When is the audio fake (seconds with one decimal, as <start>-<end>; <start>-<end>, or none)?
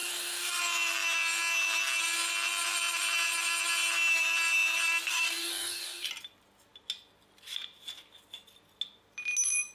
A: 0.0-0.6; 5.1-6.1